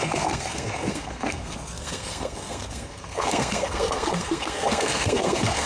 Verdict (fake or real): fake